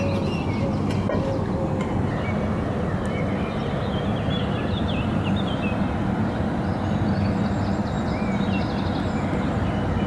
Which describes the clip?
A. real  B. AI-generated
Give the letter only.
A